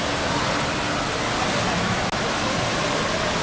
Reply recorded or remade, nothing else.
recorded